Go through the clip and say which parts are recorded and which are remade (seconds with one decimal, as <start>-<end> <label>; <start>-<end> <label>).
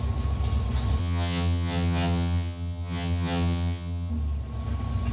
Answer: 0.0-1.0 recorded; 1.0-4.1 remade; 4.1-5.1 recorded